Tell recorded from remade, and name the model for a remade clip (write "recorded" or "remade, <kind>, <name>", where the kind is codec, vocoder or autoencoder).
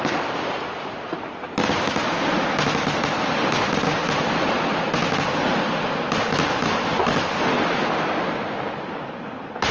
recorded